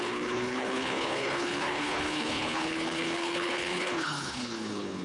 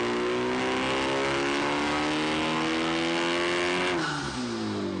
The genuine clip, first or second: second